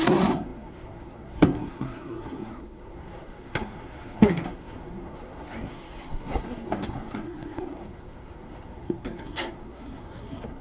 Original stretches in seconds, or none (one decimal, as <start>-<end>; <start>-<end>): none